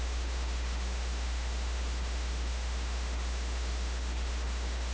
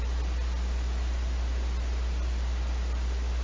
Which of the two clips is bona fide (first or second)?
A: second